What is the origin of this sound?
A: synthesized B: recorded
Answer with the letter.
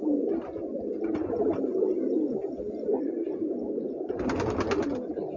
B